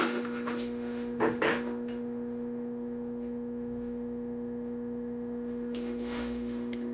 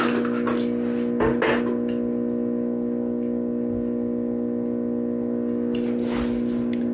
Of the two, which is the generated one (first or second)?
first